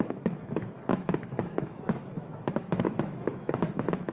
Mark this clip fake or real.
fake